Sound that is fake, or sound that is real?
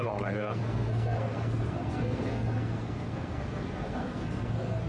fake